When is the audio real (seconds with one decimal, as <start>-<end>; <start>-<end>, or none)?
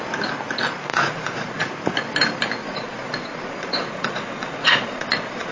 0.0-0.9; 1.7-2.6